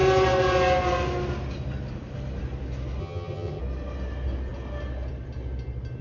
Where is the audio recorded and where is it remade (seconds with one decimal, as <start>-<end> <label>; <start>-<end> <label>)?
0.0-3.0 recorded; 3.0-3.6 remade; 3.6-6.0 recorded